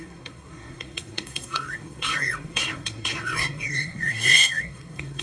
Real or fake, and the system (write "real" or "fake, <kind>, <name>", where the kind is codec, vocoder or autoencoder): fake, codec, SNAC